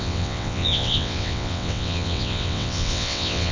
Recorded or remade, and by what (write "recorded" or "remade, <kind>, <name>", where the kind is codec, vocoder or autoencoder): remade, vocoder, WaveNeXt